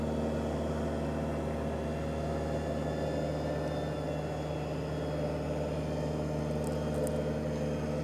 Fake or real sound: real